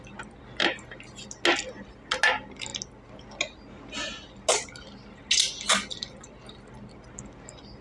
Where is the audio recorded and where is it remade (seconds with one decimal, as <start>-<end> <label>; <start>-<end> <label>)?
0.0-7.8 recorded